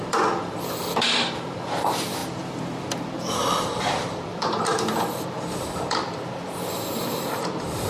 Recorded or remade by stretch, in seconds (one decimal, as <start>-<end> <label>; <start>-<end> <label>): 0.0-7.9 remade